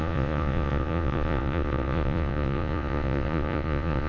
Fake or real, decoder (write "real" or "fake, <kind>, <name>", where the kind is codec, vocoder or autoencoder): fake, vocoder, Vocos